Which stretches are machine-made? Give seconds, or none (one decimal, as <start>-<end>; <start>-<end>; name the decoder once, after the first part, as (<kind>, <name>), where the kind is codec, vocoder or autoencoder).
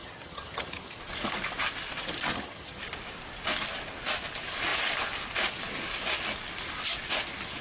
0.0-1.0 (vocoder, HiFi-GAN); 2.3-2.8